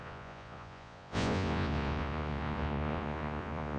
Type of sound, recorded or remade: remade